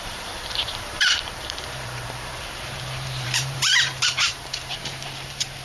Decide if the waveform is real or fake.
fake